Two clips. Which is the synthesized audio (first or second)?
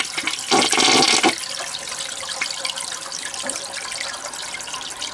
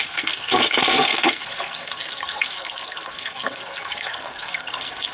second